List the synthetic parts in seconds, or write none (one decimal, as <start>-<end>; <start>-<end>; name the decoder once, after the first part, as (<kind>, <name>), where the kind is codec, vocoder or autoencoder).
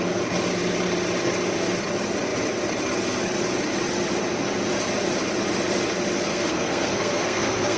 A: 6.3-7.8 (codec, SNAC)